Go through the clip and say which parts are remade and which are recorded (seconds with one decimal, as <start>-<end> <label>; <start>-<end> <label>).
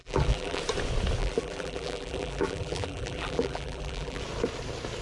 0.0-0.6 remade; 0.6-1.2 recorded; 1.2-4.2 remade; 4.2-5.0 recorded